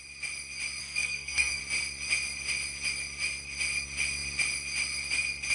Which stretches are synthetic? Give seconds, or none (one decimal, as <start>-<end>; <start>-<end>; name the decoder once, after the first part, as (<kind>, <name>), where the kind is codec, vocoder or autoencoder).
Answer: 0.8-1.6 (codec, SNAC)